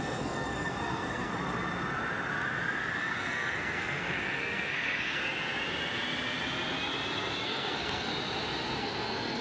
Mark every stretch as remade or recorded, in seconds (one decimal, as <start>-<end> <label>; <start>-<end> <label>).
0.0-1.3 remade; 1.3-3.0 recorded; 3.0-5.2 remade; 5.2-7.4 recorded; 7.4-8.1 remade; 8.1-8.8 recorded; 8.8-9.4 remade